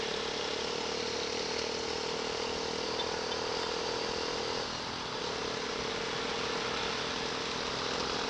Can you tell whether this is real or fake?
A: real